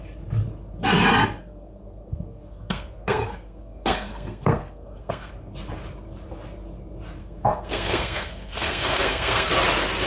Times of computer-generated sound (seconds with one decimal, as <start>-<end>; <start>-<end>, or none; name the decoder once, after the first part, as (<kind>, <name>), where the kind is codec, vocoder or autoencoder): 1.4-5.3 (codec, SNAC); 7.2-9.5